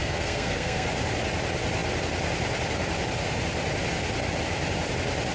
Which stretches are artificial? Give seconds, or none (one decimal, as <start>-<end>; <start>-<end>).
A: 0.0-0.9

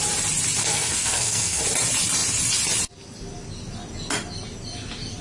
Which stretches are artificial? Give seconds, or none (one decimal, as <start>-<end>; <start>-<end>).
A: 0.6-1.6

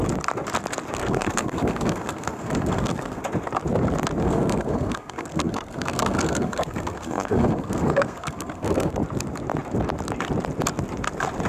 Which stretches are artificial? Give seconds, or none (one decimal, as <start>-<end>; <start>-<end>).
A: 1.0-3.2; 4.2-8.9